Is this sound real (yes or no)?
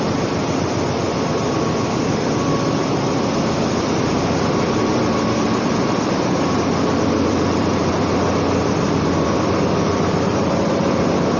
no